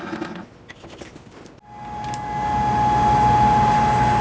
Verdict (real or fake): real